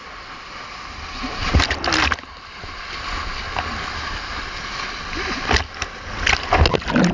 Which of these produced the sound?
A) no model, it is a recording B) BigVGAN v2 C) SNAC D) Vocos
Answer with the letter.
A